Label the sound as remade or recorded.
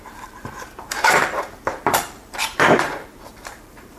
remade